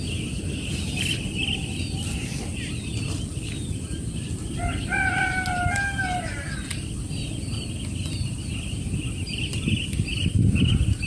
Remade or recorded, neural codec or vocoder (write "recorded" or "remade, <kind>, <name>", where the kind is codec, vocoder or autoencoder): recorded